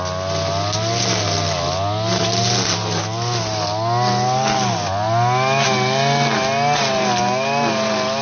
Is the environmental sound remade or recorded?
recorded